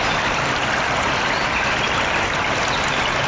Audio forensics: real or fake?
real